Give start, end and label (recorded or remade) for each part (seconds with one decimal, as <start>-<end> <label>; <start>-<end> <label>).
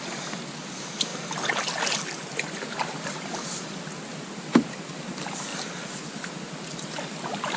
0.0-7.6 recorded